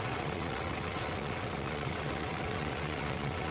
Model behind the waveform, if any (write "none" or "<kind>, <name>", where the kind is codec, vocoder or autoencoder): vocoder, WaveNeXt